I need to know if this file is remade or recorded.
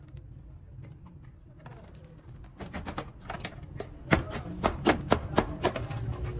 recorded